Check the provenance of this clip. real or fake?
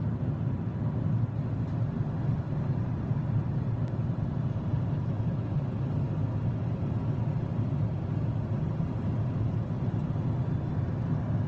real